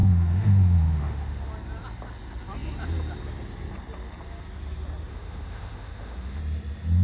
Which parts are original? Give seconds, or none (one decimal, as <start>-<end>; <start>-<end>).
1.5-5.1; 6.4-7.0

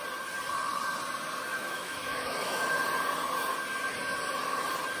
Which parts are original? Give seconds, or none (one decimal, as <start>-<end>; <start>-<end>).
0.0-1.5; 2.6-5.0

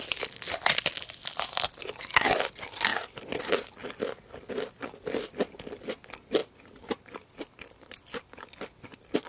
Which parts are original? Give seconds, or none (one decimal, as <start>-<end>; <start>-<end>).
0.0-9.3

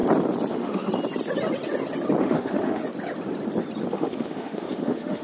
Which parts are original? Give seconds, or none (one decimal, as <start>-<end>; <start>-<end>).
0.0-0.5; 0.9-2.2; 2.8-3.9

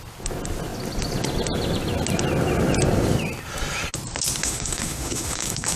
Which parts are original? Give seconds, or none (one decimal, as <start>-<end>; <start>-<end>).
0.0-4.4

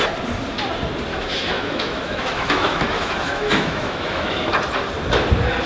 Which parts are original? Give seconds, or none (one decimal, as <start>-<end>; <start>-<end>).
0.0-1.1; 4.5-5.7